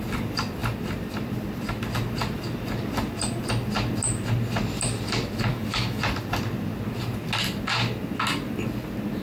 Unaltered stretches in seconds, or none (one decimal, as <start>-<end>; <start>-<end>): 0.0-5.5; 6.0-9.2